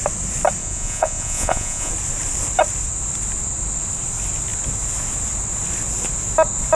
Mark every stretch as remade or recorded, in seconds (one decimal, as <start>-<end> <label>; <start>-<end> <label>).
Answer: 0.0-0.6 recorded; 0.6-1.9 remade; 1.9-6.7 recorded